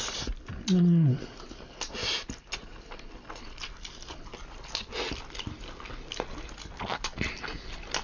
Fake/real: real